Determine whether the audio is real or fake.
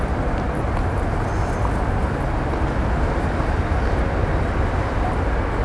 real